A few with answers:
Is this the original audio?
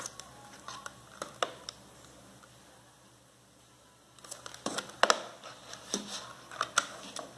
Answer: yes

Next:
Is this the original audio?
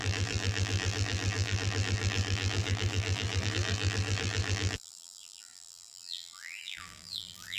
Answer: no